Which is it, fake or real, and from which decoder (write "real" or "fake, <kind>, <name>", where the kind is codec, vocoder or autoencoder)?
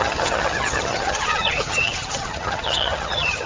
fake, vocoder, HiFi-GAN